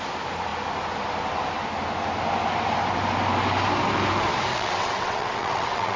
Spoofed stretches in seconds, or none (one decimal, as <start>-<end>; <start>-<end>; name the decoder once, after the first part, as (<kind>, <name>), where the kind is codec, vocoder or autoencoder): 4.5-6.0 (vocoder, WaveNeXt)